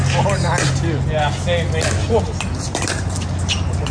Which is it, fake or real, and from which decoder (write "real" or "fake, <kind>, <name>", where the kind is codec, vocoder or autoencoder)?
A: real